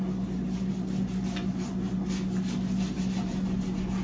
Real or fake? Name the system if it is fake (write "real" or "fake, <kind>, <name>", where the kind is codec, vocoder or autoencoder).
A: real